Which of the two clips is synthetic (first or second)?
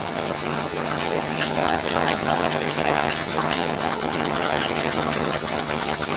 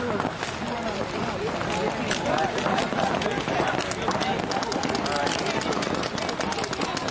first